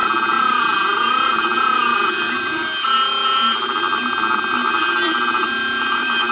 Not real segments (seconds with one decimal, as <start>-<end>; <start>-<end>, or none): 1.0-1.5; 5.3-6.3

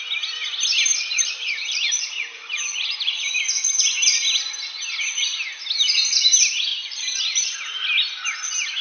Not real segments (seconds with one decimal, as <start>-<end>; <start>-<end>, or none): 0.9-3.4; 6.7-7.6

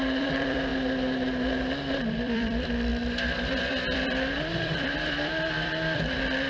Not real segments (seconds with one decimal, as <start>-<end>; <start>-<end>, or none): 0.0-0.7; 2.1-2.9; 3.7-6.5

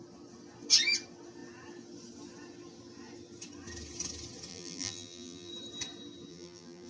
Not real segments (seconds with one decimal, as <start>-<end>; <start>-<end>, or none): 4.5-5.5; 6.3-6.9